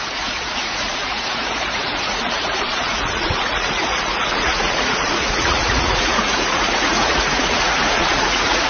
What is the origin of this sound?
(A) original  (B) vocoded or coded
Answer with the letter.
B